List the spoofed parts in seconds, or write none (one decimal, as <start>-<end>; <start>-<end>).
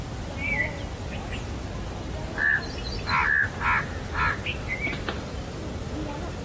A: none